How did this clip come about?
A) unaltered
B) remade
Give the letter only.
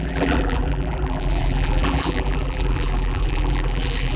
B